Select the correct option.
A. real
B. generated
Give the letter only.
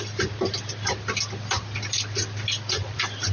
A